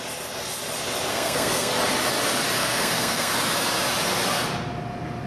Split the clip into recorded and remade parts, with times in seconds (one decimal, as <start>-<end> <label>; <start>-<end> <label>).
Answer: 0.0-1.1 recorded; 1.1-1.7 remade; 1.7-2.6 recorded; 2.6-3.3 remade; 3.3-5.3 recorded